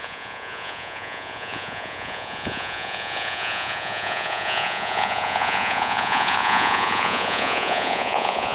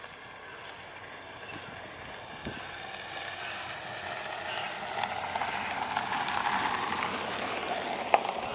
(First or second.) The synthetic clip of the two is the first